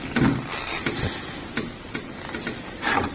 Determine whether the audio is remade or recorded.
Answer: recorded